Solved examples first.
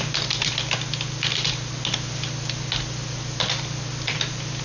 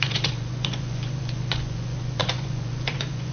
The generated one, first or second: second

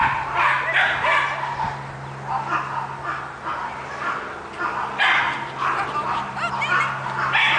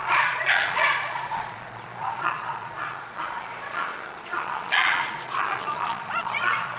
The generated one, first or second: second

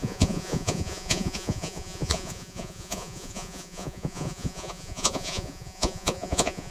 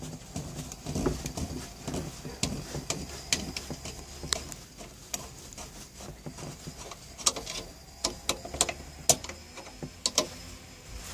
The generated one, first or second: first